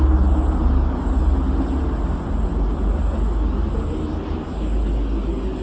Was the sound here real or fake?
real